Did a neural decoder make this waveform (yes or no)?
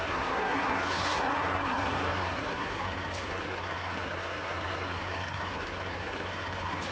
yes